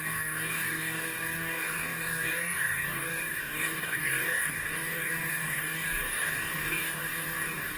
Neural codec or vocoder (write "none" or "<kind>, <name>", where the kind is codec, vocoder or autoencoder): codec, DAC